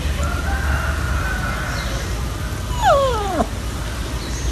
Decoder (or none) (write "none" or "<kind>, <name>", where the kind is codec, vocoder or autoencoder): none